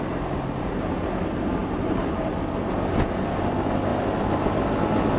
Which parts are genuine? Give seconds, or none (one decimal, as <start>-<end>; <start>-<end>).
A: 0.0-1.6; 2.3-5.2